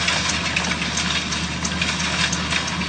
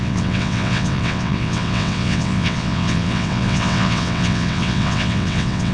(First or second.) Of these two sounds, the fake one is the second